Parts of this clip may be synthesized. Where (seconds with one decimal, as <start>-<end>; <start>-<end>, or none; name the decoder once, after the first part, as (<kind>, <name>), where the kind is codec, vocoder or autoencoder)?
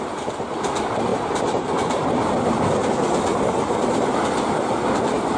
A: none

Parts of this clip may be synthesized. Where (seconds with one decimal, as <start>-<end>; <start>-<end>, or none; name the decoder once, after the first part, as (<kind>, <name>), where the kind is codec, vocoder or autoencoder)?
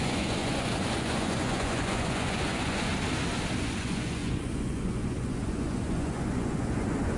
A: 0.0-2.9 (vocoder, Vocos); 3.6-7.2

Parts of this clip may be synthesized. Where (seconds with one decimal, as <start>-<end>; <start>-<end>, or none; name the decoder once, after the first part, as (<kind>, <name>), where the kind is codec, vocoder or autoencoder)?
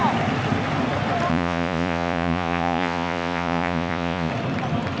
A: 1.3-4.3 (vocoder, Vocos)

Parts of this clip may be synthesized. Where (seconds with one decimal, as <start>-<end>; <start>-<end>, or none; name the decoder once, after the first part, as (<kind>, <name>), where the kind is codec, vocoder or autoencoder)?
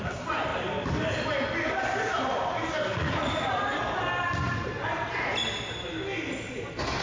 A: 2.9-3.5 (vocoder, Vocos)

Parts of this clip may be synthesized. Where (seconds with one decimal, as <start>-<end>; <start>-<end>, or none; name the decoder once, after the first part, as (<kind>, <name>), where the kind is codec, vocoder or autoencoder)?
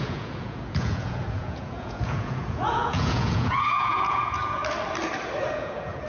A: 0.0-4.6 (vocoder, Vocos); 5.5-6.1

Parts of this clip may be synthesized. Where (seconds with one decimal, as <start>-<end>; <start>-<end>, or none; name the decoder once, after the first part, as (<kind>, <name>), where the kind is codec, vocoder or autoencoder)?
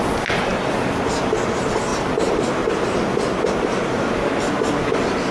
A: none